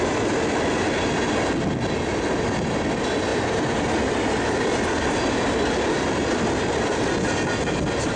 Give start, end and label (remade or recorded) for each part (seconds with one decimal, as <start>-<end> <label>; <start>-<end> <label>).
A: 0.0-8.2 recorded